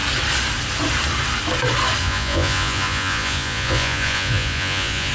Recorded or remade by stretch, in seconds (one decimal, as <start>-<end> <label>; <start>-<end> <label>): 0.0-2.0 recorded; 2.0-5.1 remade